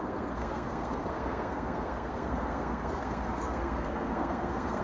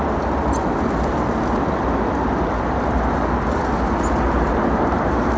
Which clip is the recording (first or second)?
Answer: second